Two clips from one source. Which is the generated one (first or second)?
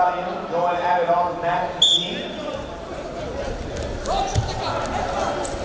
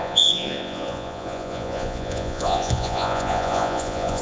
second